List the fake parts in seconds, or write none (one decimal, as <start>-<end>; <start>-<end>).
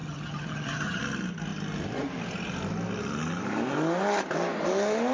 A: 0.0-1.0